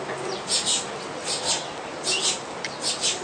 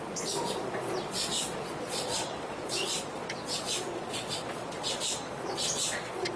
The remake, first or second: second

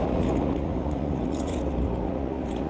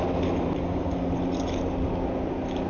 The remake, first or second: first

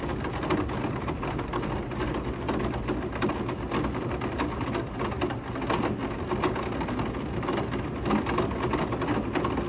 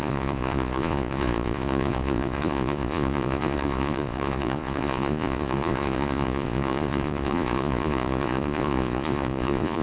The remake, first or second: second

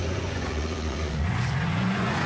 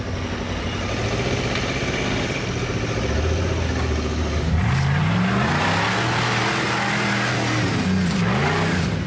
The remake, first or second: first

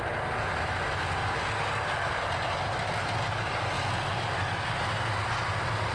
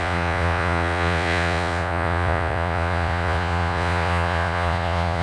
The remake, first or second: second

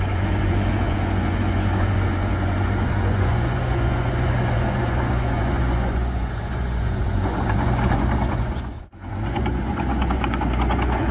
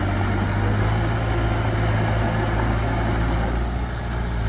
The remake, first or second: first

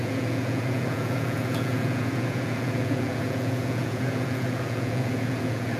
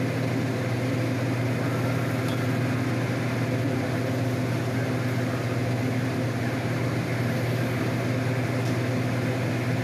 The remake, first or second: first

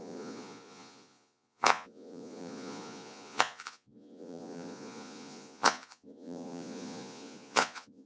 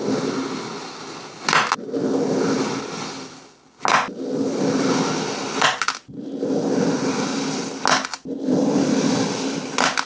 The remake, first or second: first